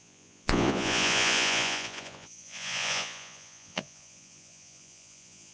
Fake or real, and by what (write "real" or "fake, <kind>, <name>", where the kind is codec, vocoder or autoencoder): fake, vocoder, Vocos